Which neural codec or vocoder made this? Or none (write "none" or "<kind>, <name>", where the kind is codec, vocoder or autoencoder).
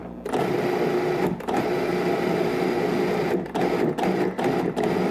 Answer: none